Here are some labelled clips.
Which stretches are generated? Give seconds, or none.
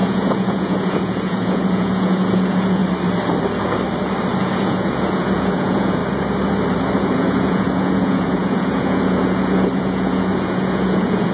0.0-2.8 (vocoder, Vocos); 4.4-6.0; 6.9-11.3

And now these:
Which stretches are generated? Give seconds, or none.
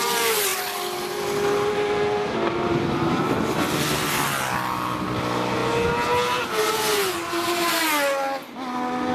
none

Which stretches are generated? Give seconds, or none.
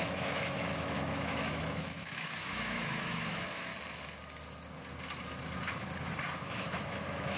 0.0-3.7 (autoencoder, DAC-VAE); 6.4-7.4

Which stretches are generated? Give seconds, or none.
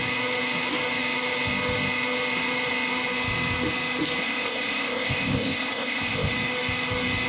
4.2-6.3 (codec, ZipCodec)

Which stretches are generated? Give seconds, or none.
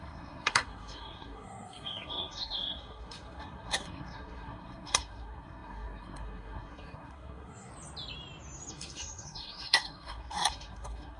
0.0-7.7 (codec, SNAC); 8.7-11.2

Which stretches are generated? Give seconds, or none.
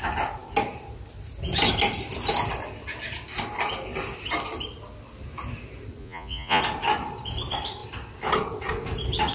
6.0-6.6 (vocoder, Vocos)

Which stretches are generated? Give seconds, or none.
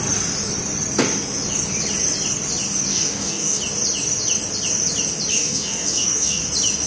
2.9-3.6 (codec, DAC); 5.3-6.4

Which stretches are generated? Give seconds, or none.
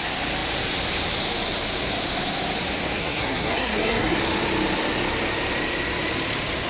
3.0-4.2 (codec, SNAC)